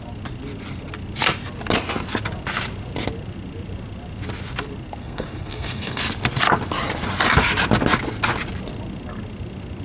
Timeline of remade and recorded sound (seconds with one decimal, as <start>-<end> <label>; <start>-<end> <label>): 0.0-5.0 recorded; 5.0-6.0 remade; 6.0-9.8 recorded